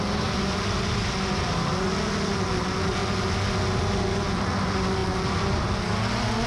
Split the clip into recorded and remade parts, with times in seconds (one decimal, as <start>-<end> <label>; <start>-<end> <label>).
0.0-6.5 recorded